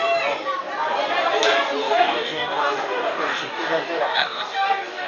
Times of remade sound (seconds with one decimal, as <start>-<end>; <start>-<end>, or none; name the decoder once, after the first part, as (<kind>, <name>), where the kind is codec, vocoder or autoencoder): 1.8-5.1 (codec, DAC)